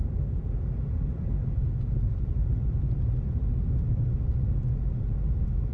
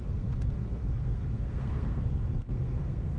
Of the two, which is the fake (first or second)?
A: second